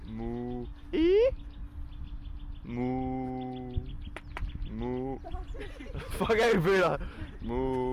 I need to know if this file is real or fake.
real